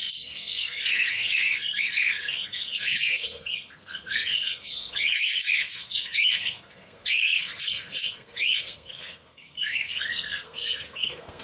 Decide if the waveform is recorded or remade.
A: remade